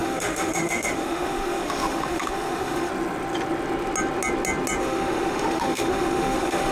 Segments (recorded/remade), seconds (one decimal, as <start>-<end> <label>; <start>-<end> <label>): 0.0-2.9 remade; 2.9-4.8 recorded; 4.8-6.7 remade